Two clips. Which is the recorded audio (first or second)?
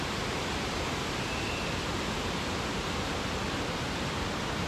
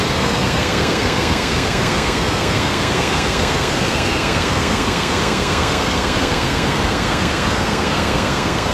first